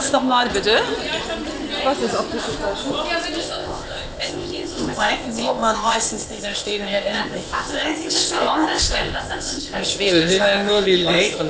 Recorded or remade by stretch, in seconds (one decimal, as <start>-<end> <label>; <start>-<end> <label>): 0.0-0.5 remade; 0.5-3.4 recorded; 3.4-11.5 remade